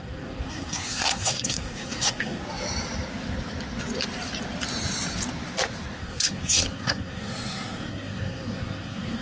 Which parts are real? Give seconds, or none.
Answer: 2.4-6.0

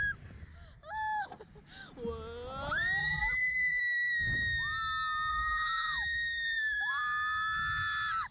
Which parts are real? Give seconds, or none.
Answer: 0.0-3.0; 3.8-5.3; 6.9-8.3

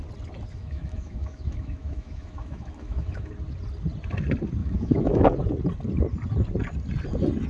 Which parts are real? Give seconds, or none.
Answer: 0.0-0.5; 3.3-4.6; 5.2-7.5

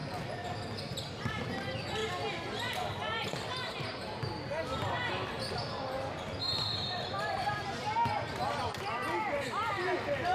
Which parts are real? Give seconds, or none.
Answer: 0.0-10.3

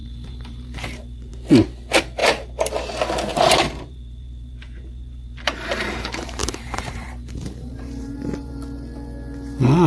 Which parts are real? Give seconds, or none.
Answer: 1.3-2.2; 2.7-3.3; 8.5-9.9